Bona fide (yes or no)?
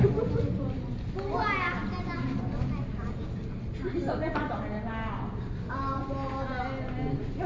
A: yes